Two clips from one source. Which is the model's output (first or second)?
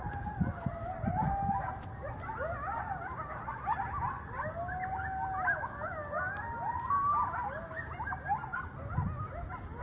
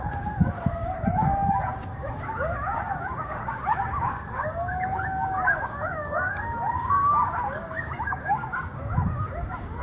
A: second